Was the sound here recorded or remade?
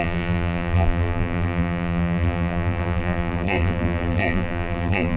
remade